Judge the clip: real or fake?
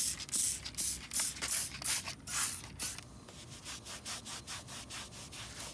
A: real